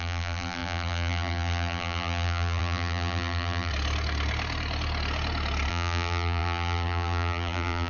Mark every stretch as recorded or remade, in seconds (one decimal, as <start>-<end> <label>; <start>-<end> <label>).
0.0-3.7 remade; 3.7-5.7 recorded; 5.7-7.9 remade